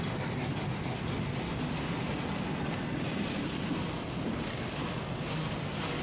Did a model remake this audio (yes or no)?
no